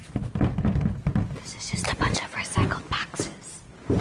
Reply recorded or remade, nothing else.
recorded